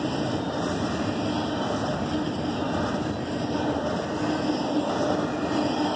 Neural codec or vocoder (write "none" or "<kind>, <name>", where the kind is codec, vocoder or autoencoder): none